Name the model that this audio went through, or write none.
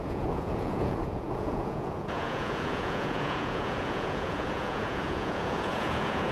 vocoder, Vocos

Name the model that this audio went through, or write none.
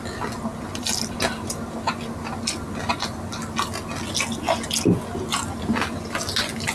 none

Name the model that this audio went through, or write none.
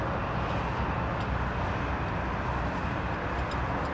none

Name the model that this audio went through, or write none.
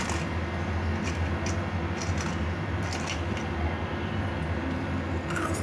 none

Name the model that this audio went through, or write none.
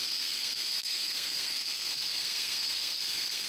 codec, SNAC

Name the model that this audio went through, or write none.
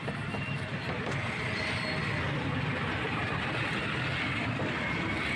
none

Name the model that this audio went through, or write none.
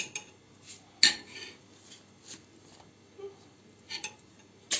none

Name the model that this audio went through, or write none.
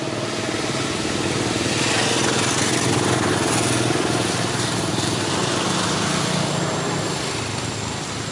none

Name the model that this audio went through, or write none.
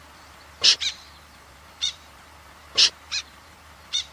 vocoder, BigVGAN v2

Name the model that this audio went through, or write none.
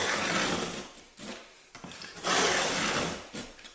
none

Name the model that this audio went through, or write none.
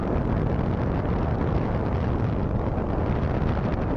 none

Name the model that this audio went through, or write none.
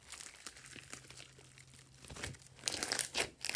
none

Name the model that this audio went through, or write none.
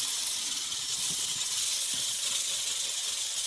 vocoder, WaveNeXt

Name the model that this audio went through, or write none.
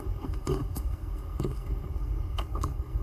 codec, SNAC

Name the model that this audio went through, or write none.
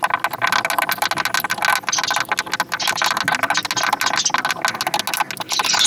none